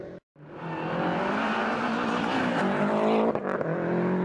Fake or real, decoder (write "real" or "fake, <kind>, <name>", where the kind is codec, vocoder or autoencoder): real